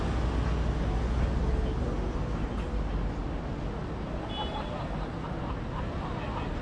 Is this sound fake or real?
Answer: real